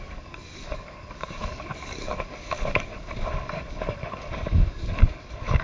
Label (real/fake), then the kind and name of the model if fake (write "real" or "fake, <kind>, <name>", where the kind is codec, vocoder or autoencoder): fake, codec, DAC